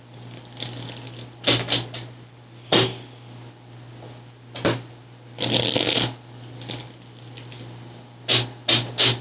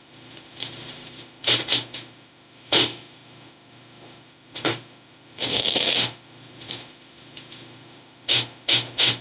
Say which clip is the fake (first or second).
second